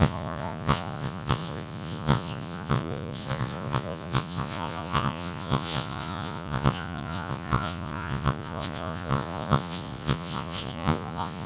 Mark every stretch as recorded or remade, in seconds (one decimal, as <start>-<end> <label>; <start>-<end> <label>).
0.0-11.5 remade